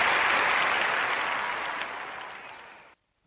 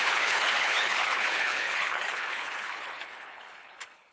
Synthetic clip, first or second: second